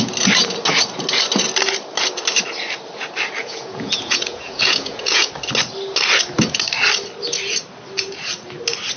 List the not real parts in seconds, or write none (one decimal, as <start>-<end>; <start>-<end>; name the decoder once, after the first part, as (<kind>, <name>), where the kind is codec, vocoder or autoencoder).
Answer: 3.4-5.3 (vocoder, Vocos)